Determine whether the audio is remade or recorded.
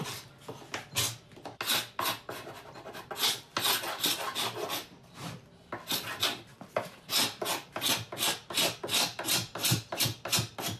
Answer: recorded